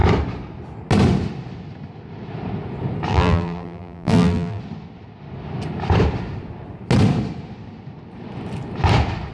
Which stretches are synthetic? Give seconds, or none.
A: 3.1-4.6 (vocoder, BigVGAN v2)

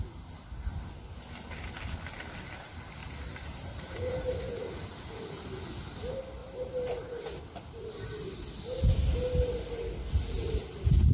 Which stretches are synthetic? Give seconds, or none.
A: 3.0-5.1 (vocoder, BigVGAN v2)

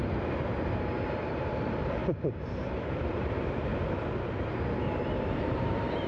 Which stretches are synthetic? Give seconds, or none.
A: 1.4-3.7 (vocoder, BigVGAN v2); 5.4-6.1